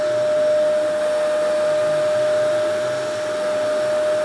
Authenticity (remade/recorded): recorded